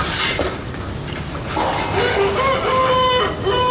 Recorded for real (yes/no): yes